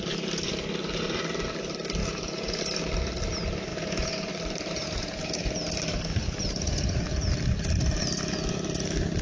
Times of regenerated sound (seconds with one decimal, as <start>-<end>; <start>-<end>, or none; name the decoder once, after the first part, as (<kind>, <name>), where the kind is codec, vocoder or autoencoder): 2.0-2.6 (vocoder, Vocos); 3.7-4.3; 4.8-5.5; 6.2-7.3